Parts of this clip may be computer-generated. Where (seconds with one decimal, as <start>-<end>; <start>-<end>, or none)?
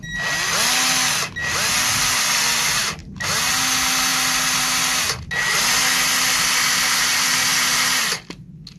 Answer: none